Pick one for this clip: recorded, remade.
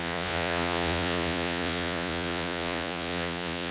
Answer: remade